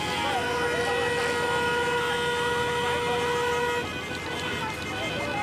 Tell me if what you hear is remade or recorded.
recorded